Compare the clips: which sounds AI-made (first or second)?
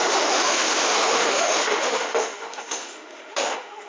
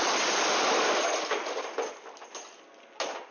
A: first